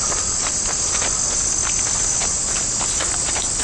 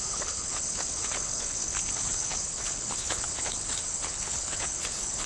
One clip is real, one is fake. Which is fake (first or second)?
second